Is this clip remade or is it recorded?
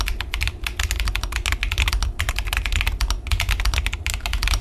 recorded